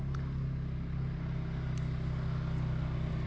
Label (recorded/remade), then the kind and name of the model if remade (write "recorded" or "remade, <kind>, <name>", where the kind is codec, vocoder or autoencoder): recorded